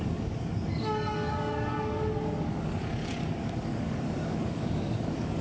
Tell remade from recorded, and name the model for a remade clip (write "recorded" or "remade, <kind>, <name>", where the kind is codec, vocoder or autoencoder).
remade, codec, DAC